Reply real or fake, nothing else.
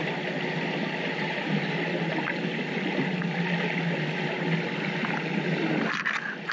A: real